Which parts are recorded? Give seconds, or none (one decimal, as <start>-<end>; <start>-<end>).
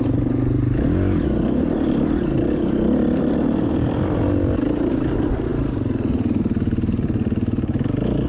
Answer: 0.0-8.3